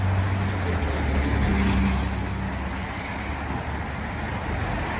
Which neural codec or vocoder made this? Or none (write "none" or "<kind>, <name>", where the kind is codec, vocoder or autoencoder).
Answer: none